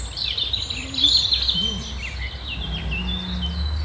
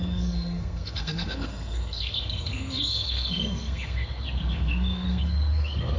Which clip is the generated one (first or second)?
second